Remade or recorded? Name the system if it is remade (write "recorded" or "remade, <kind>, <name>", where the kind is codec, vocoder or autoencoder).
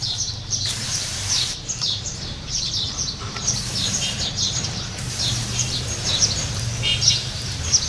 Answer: remade, vocoder, BigVGAN v2